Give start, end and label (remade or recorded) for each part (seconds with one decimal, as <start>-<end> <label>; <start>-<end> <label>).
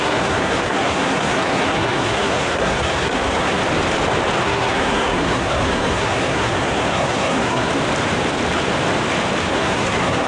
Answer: 0.0-3.6 remade; 3.6-4.4 recorded; 4.4-7.7 remade; 7.7-9.5 recorded; 9.5-10.3 remade